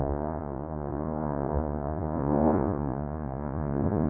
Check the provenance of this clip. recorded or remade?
remade